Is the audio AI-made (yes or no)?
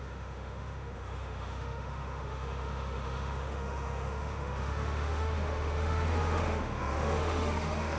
yes